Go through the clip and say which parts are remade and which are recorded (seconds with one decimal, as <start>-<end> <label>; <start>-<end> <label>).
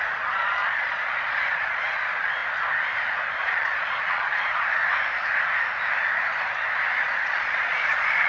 0.0-2.4 remade; 2.4-3.3 recorded; 3.3-4.8 remade; 4.8-7.0 recorded; 7.0-8.3 remade